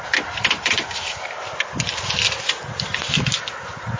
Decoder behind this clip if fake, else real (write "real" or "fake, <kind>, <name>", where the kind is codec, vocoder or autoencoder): real